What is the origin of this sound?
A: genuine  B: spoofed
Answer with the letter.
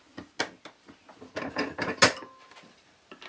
A